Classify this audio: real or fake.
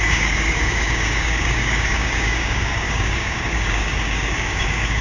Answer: fake